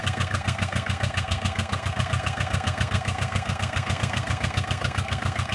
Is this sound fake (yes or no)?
yes